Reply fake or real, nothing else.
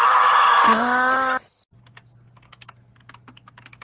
real